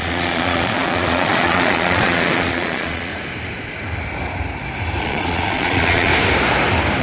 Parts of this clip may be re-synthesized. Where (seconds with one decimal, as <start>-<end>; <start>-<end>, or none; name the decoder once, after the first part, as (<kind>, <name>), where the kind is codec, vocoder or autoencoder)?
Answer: 0.0-3.1 (vocoder, Vocos); 5.0-6.1